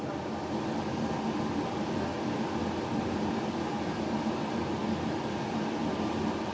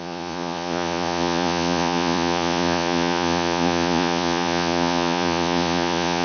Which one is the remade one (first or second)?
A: second